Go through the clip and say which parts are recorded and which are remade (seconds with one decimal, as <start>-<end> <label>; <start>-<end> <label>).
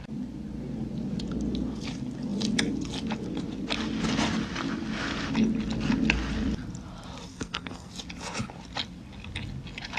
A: 0.0-7.3 recorded; 7.3-7.9 remade; 7.9-10.0 recorded